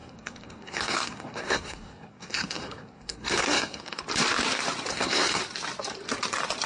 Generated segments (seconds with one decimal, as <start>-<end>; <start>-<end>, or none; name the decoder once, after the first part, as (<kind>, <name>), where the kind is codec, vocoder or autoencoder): 0.0-4.0 (codec, SNAC); 4.9-5.4